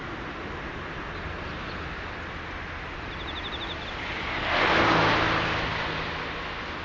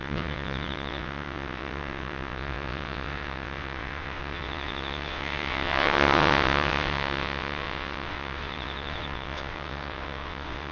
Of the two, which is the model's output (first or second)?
second